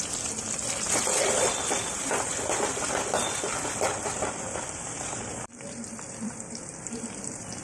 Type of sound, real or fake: fake